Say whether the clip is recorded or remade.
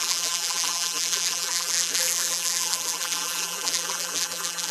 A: remade